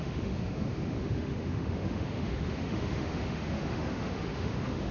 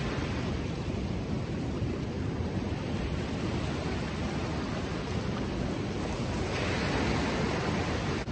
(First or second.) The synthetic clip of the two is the first